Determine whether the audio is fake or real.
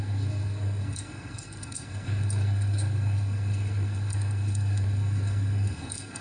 fake